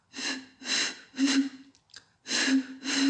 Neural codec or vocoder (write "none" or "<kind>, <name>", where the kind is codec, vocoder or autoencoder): none